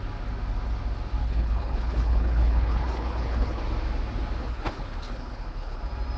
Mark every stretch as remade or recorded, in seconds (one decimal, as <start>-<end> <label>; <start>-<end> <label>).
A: 0.0-1.2 recorded; 1.2-3.6 remade; 3.6-4.4 recorded; 4.4-5.8 remade; 5.8-6.2 recorded